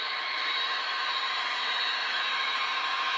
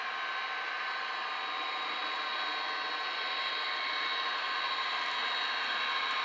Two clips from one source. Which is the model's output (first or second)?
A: first